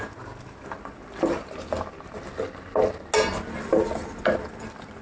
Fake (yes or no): no